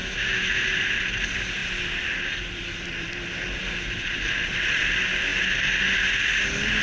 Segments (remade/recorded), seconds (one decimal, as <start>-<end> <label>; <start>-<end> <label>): 0.0-0.6 remade; 0.6-6.8 recorded